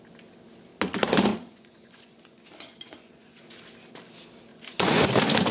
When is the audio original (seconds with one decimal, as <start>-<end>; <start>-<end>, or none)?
0.0-1.3; 3.4-4.5; 5.1-5.5